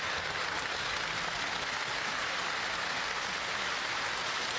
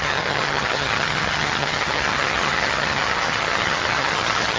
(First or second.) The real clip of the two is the first